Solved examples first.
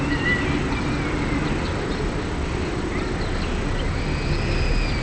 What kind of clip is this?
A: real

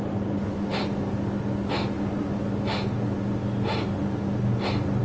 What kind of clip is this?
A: real